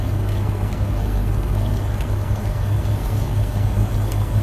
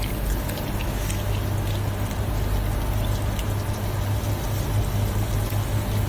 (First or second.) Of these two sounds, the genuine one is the second